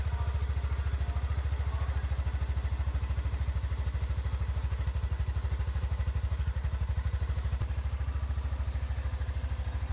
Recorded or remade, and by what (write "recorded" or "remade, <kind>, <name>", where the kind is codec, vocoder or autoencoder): recorded